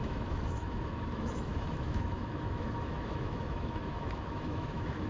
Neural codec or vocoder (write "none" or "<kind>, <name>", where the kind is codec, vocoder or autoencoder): autoencoder, DAC-VAE